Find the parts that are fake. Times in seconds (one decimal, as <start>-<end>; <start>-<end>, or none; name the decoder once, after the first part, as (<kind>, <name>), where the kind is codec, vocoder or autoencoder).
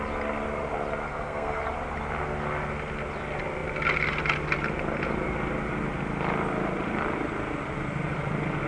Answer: 1.1-1.6 (codec, SNAC)